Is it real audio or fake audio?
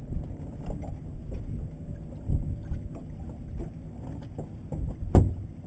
real